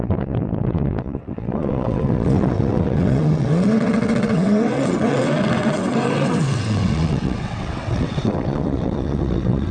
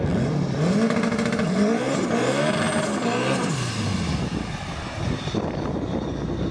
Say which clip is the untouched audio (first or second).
second